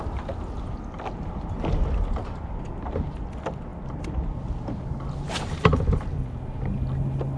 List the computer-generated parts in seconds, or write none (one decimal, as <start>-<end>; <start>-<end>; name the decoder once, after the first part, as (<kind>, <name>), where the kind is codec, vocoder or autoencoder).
none